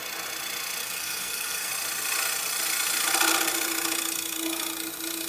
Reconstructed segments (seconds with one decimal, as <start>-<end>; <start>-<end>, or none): 0.8-1.7